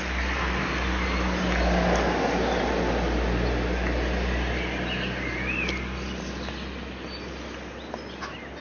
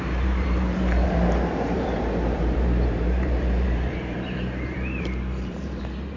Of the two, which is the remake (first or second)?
second